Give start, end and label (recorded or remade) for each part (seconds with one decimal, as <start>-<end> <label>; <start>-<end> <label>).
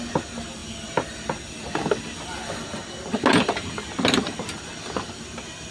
0.0-5.7 recorded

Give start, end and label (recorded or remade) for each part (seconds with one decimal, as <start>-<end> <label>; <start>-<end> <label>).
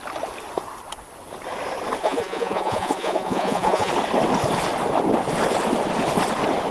0.0-2.0 recorded; 2.0-3.9 remade; 3.9-6.7 recorded